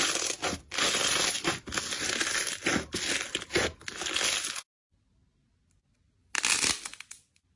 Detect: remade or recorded recorded